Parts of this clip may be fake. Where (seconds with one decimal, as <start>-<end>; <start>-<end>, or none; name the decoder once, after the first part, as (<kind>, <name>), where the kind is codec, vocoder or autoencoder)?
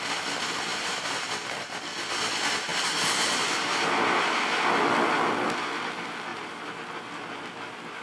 0.7-1.3 (vocoder, BigVGAN v2); 2.7-4.4; 6.3-6.9